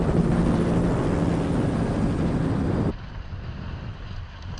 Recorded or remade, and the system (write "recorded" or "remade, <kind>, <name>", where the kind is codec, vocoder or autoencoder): recorded